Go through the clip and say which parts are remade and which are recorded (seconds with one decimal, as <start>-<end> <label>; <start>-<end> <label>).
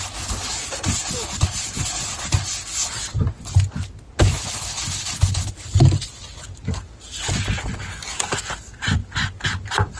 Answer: 0.0-10.0 recorded